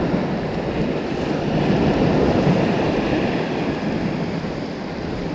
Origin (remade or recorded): recorded